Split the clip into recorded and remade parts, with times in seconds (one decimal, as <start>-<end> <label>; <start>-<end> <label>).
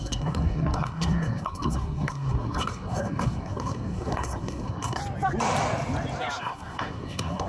0.0-5.0 remade; 5.0-6.4 recorded; 6.4-7.5 remade